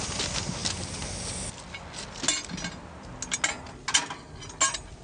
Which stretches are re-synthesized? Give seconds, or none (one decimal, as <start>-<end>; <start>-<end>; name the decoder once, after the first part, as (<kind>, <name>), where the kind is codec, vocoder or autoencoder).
none